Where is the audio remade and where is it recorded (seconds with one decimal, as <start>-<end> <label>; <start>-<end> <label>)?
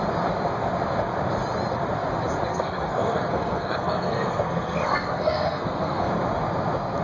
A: 0.0-2.5 recorded; 2.5-6.1 remade; 6.1-7.0 recorded